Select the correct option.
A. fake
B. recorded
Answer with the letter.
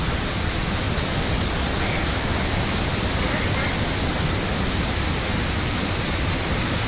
B